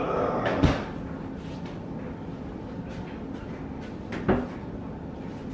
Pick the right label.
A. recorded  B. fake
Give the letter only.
A